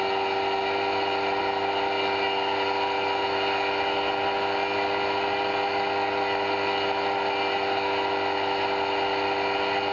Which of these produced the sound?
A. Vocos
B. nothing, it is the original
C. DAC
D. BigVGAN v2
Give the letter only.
B